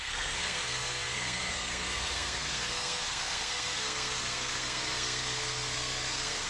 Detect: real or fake fake